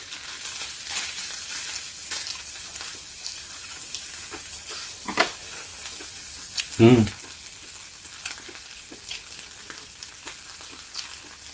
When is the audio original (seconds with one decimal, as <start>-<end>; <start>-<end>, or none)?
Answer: 0.0-11.5

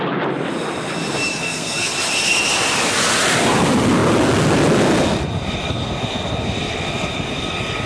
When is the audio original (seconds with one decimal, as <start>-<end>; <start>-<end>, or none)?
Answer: 0.0-1.3; 1.9-7.9

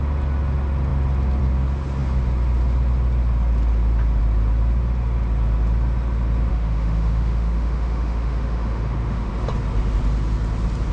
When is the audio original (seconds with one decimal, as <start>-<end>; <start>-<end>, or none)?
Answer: 0.0-6.5; 9.3-10.9

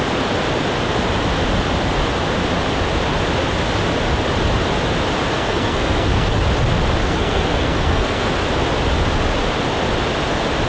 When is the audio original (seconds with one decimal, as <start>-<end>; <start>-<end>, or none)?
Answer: 0.0-5.3; 6.4-7.0; 8.3-10.7

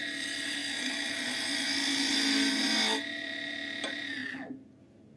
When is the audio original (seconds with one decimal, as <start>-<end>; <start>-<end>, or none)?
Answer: 0.6-2.5; 4.2-4.8

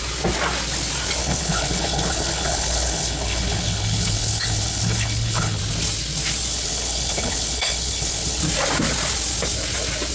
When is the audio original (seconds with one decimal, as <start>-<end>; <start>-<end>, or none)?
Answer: 0.0-1.2; 5.6-6.5; 8.4-10.1

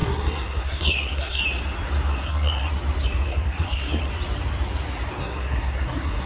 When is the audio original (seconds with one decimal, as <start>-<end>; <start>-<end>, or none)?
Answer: 1.4-2.1; 2.7-3.3; 4.1-5.2

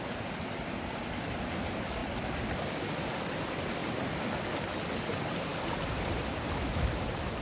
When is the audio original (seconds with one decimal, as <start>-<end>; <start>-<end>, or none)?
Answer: 0.0-2.0; 2.8-3.8; 4.5-5.5; 6.3-7.4